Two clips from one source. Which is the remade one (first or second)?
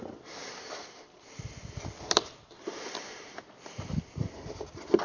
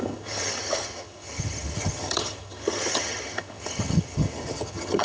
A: second